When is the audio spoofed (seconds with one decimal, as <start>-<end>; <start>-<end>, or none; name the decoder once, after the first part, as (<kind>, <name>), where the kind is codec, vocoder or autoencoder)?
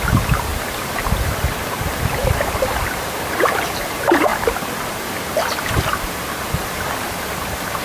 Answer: none